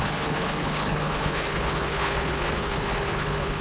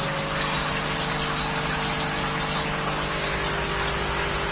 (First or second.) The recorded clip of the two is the second